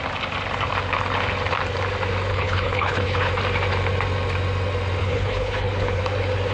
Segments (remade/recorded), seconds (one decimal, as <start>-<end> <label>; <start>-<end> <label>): 0.0-2.3 recorded; 2.3-3.3 remade; 3.3-5.0 recorded; 5.0-6.0 remade; 6.0-6.5 recorded